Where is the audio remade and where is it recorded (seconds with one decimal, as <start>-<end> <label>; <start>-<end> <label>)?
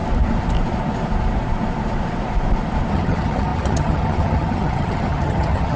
0.0-2.9 recorded; 2.9-5.8 remade